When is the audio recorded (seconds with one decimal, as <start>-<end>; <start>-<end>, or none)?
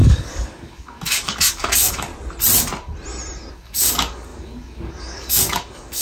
2.1-3.5